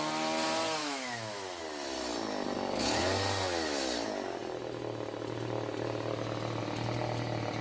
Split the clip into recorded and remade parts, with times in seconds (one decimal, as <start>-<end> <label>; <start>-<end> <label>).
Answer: 0.0-0.8 recorded; 0.8-1.6 remade; 1.6-7.6 recorded

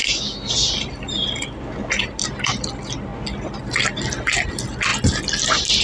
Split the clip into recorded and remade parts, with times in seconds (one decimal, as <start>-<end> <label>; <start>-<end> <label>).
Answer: 0.0-0.5 remade; 0.5-5.8 recorded

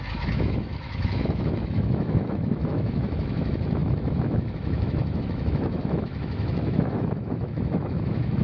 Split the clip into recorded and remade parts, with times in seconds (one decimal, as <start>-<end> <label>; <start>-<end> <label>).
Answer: 0.0-8.4 remade

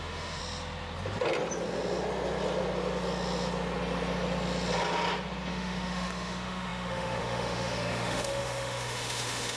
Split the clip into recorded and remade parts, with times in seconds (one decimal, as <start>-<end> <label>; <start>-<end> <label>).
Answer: 0.0-0.4 remade; 0.4-5.5 recorded; 5.5-9.6 remade